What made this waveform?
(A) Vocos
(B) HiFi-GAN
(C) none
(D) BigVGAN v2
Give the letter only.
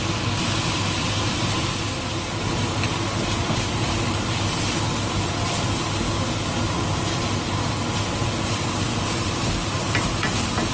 C